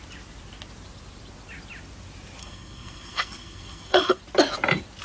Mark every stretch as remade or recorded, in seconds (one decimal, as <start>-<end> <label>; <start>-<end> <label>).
0.0-2.4 recorded; 2.4-4.2 remade; 4.2-5.0 recorded